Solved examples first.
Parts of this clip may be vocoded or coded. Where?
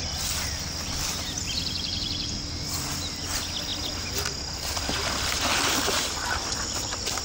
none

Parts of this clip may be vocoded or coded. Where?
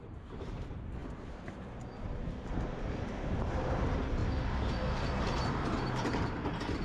0.0-4.2 (vocoder, BigVGAN v2); 5.5-6.8